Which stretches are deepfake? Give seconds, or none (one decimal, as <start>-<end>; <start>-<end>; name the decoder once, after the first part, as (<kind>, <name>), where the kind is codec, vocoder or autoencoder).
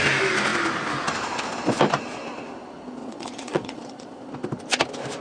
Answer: 3.0-4.3 (vocoder, Vocos)